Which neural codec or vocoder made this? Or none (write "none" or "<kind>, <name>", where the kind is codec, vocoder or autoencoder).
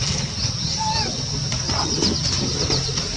none